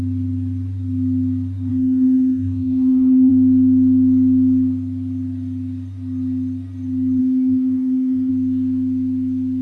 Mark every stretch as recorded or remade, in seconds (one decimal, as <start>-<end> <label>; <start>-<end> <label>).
0.0-1.7 recorded; 1.7-3.3 remade; 3.3-7.2 recorded; 7.2-8.3 remade; 8.3-9.6 recorded